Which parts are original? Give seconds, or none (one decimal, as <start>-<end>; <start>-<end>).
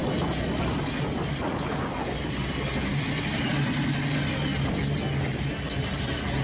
0.0-6.4